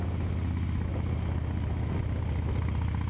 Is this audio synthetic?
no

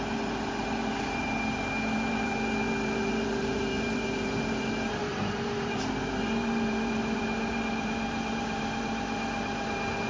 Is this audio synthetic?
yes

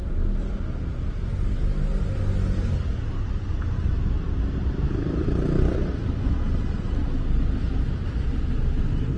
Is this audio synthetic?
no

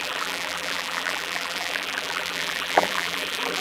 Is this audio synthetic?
yes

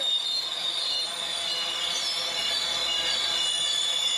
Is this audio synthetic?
no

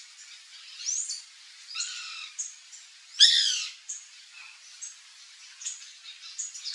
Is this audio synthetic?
yes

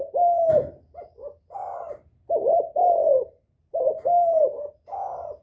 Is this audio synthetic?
yes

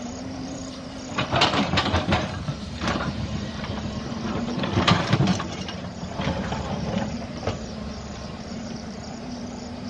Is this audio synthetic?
yes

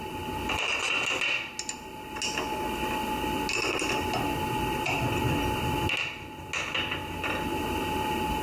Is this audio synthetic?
no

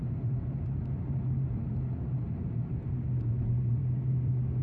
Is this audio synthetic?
yes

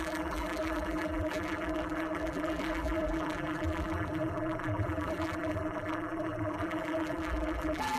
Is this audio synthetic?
yes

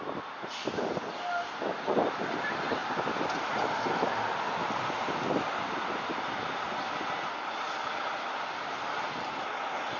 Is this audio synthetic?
no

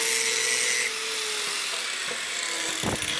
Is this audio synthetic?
no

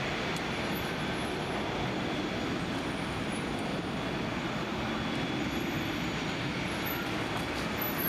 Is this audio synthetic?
no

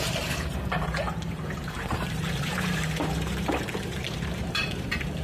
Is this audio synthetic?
yes